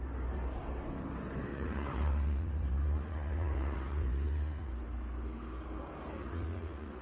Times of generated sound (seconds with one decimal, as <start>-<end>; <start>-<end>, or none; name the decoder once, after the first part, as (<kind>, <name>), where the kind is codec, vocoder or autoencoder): 1.5-4.7 (vocoder, Vocos); 6.2-7.0